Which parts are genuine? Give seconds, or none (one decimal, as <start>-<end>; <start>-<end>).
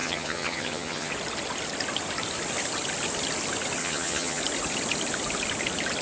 1.1-3.8; 4.4-6.0